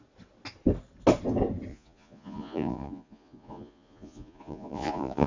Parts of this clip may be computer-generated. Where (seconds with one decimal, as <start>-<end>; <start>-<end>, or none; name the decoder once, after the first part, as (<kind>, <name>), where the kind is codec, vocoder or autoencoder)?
1.7-5.3 (vocoder, Vocos)